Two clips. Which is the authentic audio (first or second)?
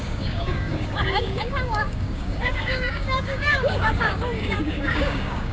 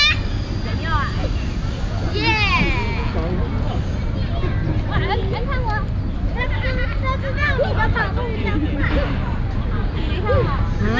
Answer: second